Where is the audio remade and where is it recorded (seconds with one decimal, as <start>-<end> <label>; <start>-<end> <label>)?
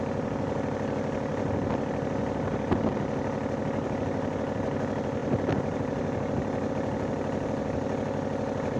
0.0-8.8 recorded